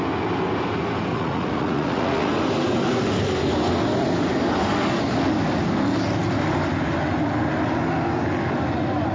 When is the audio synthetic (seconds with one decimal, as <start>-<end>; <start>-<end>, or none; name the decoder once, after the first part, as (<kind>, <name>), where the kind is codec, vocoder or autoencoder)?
1.1-2.3 (vocoder, Vocos)